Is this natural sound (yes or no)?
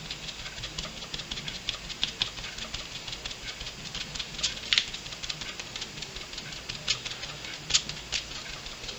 yes